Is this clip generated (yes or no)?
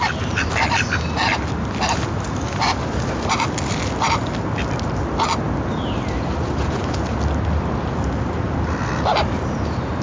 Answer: no